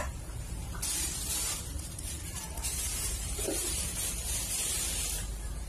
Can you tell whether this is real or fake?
fake